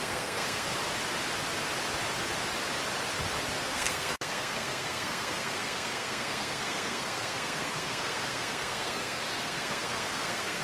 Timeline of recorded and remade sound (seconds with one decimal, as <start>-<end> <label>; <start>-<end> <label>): 0.0-0.7 remade; 0.7-3.6 recorded; 3.6-10.6 remade